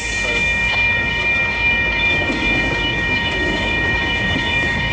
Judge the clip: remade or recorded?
remade